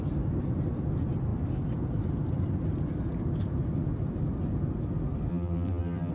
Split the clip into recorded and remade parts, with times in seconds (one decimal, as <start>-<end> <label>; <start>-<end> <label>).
0.0-5.3 recorded; 5.3-6.1 remade